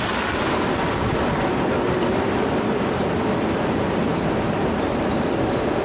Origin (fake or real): real